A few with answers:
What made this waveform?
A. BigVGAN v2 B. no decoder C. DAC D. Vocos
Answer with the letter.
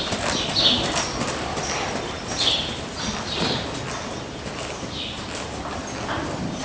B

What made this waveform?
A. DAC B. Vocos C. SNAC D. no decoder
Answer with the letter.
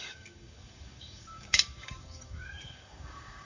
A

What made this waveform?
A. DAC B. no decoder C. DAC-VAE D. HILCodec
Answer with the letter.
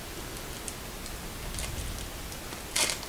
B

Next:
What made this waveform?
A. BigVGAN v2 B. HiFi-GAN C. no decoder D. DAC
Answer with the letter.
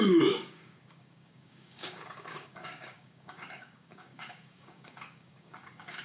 D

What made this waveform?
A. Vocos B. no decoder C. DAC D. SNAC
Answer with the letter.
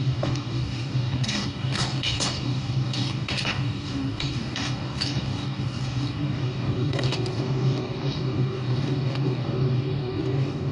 C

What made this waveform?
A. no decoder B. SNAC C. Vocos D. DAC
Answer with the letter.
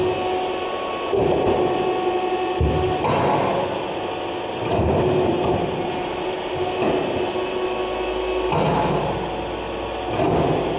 A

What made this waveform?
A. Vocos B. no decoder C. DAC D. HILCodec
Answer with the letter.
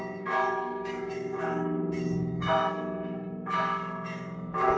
C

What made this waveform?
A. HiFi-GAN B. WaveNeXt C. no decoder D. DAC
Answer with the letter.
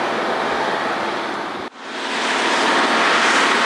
C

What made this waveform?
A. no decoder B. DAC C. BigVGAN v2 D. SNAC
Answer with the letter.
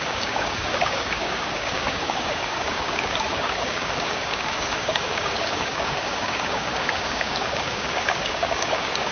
B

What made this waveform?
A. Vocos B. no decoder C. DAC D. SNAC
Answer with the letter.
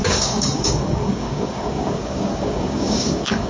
C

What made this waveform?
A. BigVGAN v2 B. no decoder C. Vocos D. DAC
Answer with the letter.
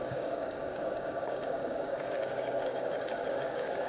D